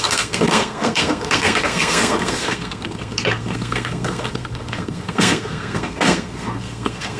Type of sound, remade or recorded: remade